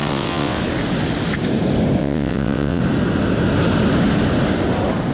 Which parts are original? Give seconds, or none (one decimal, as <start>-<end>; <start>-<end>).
0.6-2.0; 2.8-5.1